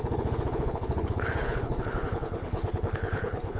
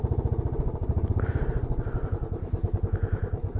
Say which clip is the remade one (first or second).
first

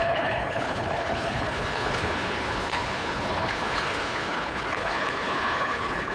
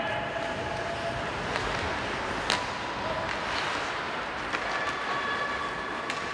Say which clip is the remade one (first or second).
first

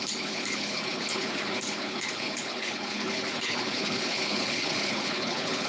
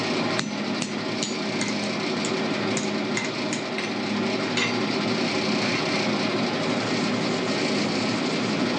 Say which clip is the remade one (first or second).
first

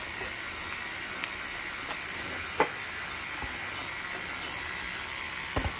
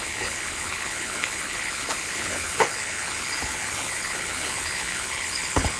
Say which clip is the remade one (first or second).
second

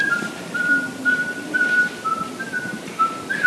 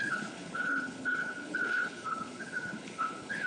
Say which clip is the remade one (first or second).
second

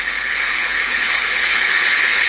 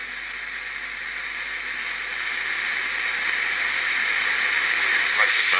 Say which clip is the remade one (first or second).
first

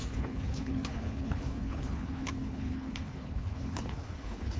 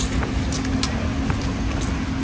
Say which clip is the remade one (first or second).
first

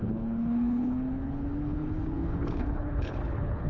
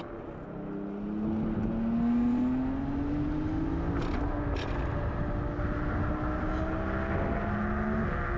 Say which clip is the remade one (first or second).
first